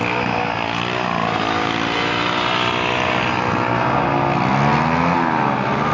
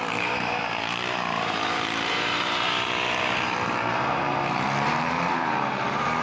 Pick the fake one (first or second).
second